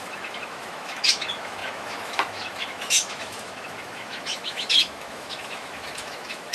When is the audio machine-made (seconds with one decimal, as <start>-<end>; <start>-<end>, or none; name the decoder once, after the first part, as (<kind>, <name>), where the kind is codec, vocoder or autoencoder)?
0.0-6.5 (autoencoder, DAC-VAE)